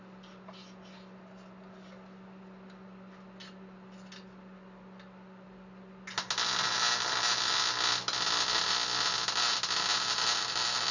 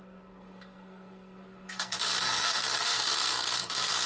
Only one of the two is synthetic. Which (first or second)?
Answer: second